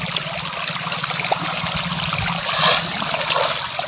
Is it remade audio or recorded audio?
recorded